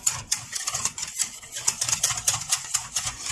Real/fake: fake